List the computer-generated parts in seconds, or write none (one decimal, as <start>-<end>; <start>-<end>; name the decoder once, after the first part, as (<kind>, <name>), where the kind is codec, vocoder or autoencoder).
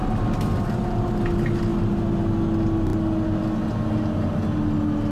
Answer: none